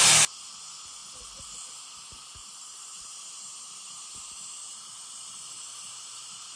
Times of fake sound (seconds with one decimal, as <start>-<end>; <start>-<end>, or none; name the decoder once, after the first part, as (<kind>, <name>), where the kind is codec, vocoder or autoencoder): 2.4-6.6 (vocoder, BigVGAN v2)